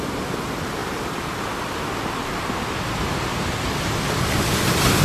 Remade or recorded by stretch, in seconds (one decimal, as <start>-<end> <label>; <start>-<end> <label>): 0.0-5.0 recorded